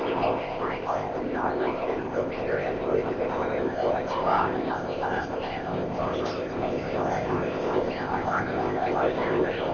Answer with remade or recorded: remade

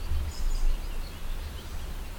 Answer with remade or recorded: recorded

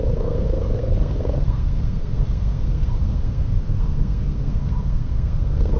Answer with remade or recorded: remade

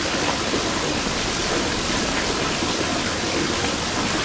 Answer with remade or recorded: recorded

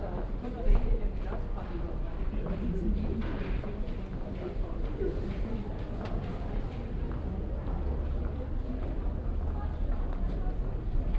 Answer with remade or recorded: recorded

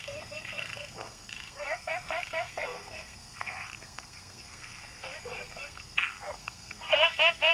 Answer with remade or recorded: remade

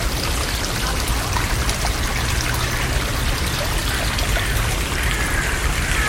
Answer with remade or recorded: recorded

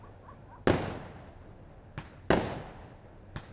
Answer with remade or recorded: recorded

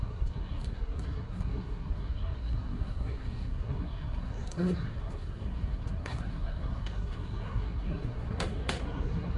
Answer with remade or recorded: remade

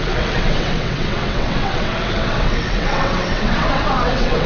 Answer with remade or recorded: remade